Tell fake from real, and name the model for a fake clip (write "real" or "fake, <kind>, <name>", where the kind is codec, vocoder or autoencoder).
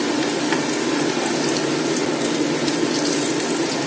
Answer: real